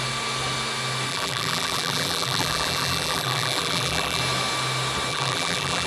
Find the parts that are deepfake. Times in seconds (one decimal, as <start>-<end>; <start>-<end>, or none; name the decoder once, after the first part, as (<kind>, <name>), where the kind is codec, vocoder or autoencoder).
1.1-4.2 (vocoder, BigVGAN v2); 5.1-5.9